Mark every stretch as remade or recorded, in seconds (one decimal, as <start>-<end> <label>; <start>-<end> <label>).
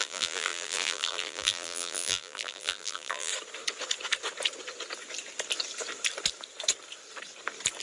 0.0-3.3 remade; 3.3-7.8 recorded